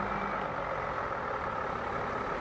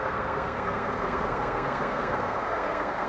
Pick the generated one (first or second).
second